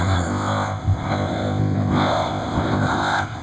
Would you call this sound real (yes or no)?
no